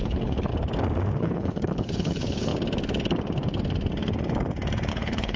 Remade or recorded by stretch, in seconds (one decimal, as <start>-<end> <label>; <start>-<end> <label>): 0.0-0.5 remade; 0.5-1.2 recorded; 1.2-2.5 remade; 2.5-4.9 recorded; 4.9-5.4 remade